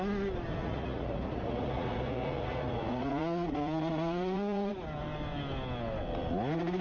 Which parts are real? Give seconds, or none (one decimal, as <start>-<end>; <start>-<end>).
0.0-0.6; 4.7-6.8